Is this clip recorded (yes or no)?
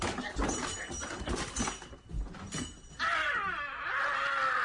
yes